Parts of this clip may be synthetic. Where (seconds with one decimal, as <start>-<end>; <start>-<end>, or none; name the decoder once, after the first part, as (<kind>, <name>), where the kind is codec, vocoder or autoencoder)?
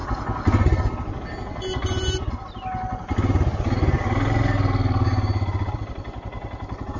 none